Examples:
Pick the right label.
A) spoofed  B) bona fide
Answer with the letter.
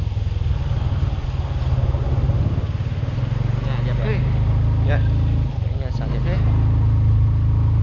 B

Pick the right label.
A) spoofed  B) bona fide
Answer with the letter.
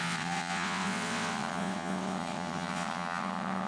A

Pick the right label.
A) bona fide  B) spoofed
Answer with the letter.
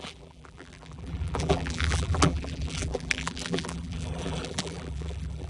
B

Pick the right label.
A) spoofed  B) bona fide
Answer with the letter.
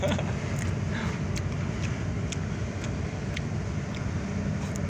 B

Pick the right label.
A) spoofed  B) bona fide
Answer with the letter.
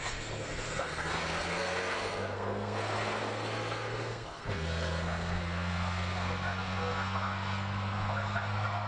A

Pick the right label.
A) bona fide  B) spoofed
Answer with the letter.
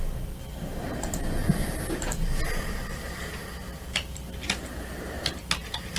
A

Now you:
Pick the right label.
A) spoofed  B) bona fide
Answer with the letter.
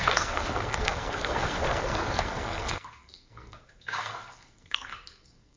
A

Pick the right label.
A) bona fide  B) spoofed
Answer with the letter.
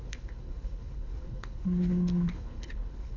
B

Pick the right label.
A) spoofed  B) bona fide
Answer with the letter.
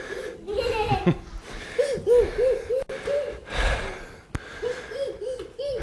B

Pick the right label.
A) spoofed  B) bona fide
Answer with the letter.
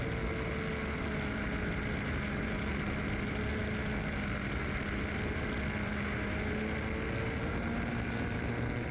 B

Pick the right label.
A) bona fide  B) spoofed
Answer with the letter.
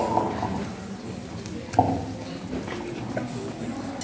A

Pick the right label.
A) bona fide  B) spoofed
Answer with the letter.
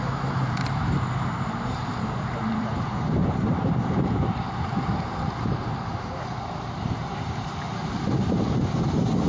B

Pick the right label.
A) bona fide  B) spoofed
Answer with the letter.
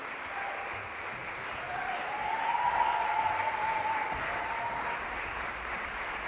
A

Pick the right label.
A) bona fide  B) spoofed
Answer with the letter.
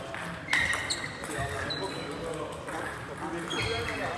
A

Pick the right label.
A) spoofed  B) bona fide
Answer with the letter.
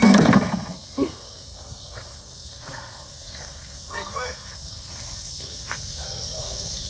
A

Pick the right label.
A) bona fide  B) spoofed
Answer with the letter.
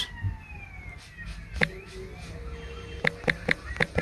A